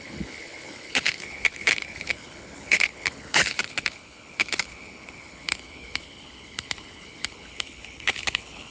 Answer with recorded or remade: remade